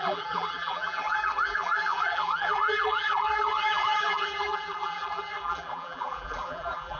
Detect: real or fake fake